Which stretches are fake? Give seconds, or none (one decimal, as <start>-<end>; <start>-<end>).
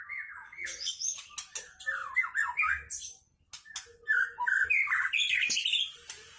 0.4-0.9